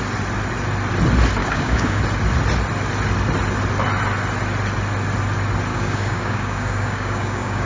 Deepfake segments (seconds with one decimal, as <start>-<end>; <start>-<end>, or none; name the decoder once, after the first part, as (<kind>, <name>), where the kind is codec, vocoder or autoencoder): 1.4-2.0 (codec, DAC); 5.7-7.7